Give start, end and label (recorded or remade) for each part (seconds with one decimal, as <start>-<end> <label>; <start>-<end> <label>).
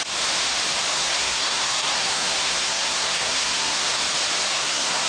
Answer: 0.0-0.9 recorded; 0.9-4.0 remade; 4.0-4.5 recorded; 4.5-5.1 remade